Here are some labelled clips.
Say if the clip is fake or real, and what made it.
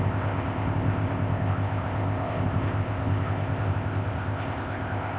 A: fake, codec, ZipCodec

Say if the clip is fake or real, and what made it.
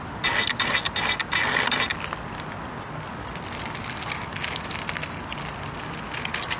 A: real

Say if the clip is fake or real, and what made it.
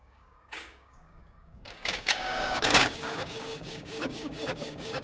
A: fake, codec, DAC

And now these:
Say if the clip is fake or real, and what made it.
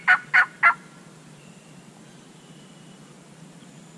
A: real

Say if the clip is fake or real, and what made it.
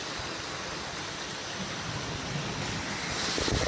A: real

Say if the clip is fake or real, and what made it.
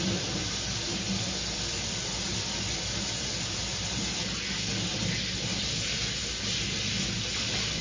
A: real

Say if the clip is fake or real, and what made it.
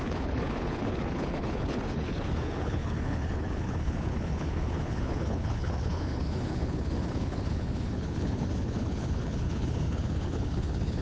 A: fake, codec, HILCodec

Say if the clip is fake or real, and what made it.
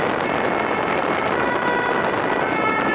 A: real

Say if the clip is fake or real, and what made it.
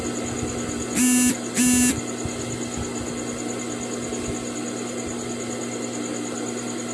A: real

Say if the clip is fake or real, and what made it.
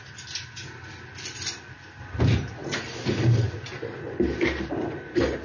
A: real